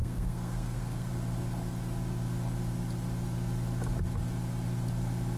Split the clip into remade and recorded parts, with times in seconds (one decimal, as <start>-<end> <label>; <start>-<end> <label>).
0.0-1.1 remade; 1.1-5.4 recorded